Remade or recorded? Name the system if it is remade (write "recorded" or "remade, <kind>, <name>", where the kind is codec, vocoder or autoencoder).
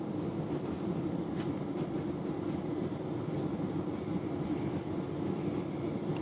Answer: recorded